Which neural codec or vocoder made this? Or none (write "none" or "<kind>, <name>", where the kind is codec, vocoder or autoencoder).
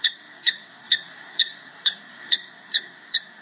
codec, SNAC